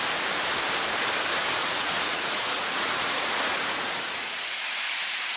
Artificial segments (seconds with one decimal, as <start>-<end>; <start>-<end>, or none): 1.6-4.8